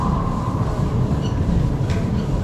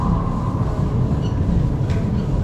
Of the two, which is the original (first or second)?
second